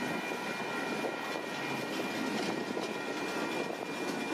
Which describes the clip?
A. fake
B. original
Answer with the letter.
B